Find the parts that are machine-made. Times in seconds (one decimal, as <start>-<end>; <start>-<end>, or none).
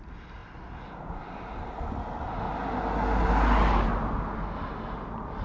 none